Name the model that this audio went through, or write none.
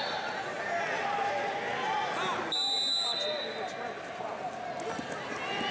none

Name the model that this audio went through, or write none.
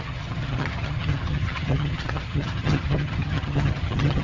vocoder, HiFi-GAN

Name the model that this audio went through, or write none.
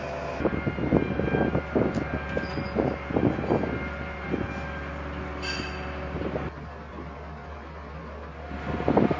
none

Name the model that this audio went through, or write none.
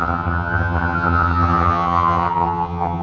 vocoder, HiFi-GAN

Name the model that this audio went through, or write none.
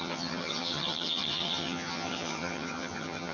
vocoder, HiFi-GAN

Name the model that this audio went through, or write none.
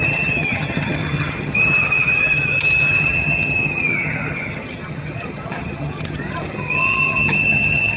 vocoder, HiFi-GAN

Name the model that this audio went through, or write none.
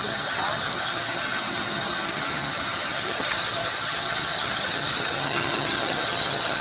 vocoder, HiFi-GAN